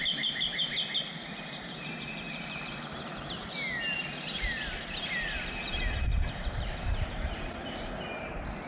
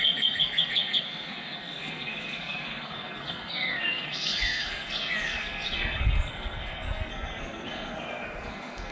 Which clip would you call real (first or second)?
first